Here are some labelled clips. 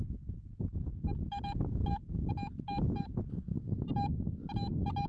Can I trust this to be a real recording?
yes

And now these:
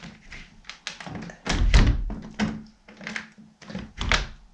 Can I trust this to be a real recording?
yes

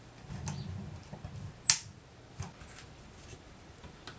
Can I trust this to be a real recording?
yes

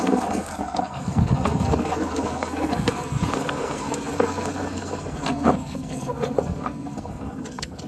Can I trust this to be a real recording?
no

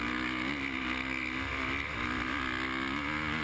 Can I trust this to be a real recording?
yes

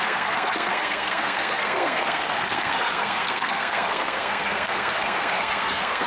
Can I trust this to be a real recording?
no